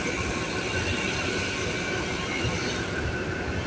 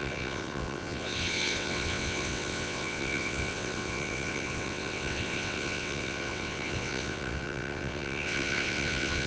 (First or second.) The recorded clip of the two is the first